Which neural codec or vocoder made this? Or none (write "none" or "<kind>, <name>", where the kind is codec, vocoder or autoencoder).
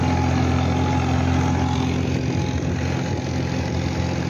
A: none